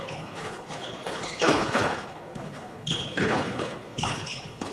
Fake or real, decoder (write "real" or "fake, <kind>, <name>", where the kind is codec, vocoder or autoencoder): fake, codec, HILCodec